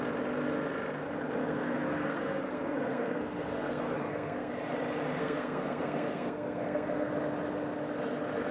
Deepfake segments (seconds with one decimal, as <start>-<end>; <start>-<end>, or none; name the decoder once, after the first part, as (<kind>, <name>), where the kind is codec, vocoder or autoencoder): 1.4-4.5 (codec, SNAC); 5.2-7.1